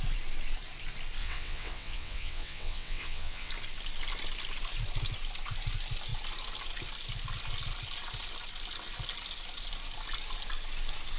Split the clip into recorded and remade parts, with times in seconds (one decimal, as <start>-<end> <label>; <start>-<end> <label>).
0.0-1.2 recorded; 1.2-3.5 remade; 3.5-11.2 recorded